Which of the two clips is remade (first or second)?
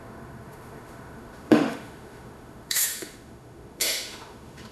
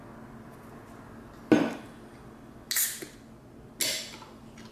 first